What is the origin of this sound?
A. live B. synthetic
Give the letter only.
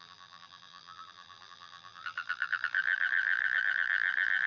B